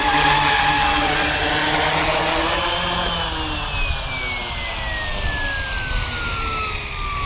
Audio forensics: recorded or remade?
recorded